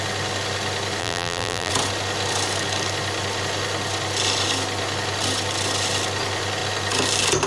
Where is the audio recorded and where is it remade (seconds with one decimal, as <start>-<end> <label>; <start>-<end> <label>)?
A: 0.0-1.0 recorded; 1.0-1.7 remade; 1.7-7.5 recorded